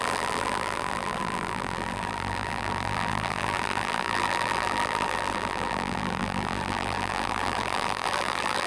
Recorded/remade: remade